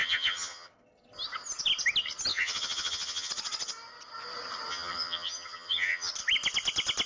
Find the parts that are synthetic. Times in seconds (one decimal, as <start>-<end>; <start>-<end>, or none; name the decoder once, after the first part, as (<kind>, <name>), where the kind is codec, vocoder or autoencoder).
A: 0.0-0.7 (vocoder, HiFi-GAN); 2.3-3.3; 4.7-6.1